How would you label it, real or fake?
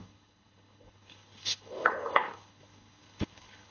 fake